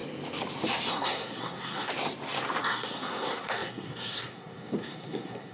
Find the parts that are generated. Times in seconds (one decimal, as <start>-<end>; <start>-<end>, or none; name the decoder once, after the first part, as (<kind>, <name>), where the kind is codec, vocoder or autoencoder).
0.9-1.9 (codec, SNAC); 2.6-5.5